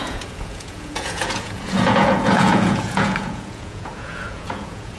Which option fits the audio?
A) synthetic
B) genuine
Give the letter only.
A